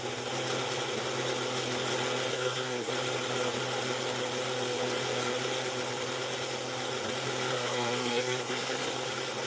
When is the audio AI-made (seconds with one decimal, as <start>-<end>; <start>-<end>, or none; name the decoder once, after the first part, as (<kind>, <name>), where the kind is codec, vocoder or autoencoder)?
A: 2.3-2.9 (codec, SNAC); 7.5-8.9